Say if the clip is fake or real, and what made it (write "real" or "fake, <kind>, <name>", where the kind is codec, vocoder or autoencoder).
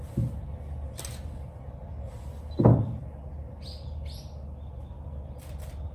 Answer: real